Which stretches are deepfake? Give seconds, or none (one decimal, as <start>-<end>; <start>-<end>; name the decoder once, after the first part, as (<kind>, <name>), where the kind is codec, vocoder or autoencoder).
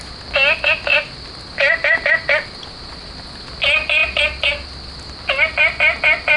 none